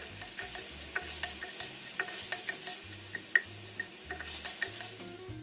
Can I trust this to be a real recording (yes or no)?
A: yes